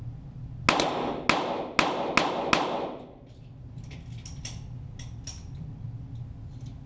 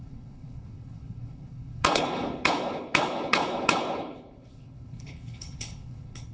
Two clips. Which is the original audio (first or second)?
first